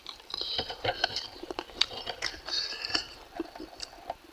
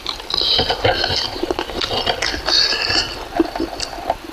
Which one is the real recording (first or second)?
second